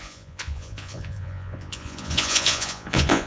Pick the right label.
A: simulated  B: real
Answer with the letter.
A